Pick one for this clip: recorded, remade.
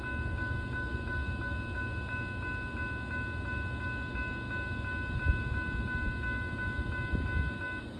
recorded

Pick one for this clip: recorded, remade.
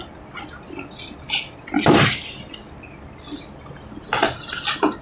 recorded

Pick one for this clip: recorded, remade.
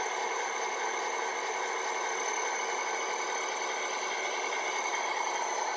recorded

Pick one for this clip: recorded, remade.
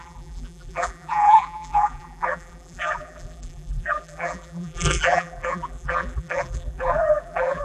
remade